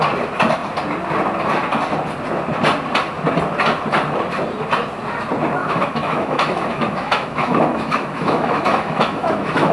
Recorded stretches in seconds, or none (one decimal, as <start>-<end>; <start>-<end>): 0.0-5.6